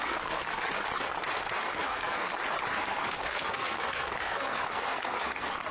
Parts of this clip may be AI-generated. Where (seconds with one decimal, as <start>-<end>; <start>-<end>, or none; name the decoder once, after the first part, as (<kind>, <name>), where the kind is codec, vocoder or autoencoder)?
0.0-0.6 (codec, SNAC); 1.6-2.3; 2.8-5.7